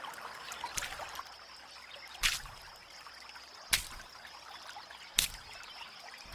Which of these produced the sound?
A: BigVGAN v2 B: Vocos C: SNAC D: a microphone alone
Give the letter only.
D